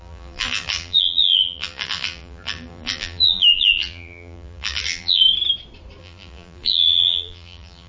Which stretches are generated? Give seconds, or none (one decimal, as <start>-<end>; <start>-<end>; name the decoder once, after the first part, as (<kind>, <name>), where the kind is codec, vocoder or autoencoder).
0.0-5.2 (vocoder, BigVGAN v2); 6.0-7.9